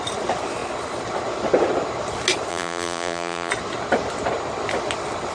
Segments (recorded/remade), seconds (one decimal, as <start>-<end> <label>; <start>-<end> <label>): 0.0-2.5 recorded; 2.5-3.5 remade; 3.5-5.3 recorded